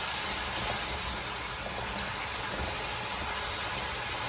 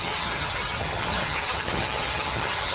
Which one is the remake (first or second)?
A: second